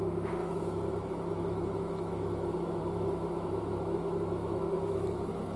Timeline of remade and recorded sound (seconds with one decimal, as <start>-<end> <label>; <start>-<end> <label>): 0.0-5.6 remade